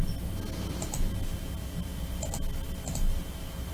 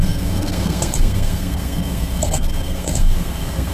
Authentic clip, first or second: first